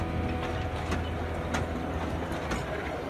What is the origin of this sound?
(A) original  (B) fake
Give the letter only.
A